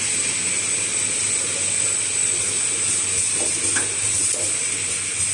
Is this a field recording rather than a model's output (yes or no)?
yes